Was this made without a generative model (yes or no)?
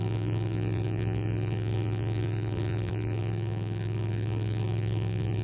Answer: no